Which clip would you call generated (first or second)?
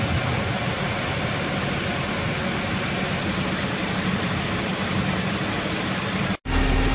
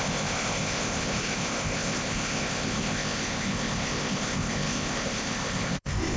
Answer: second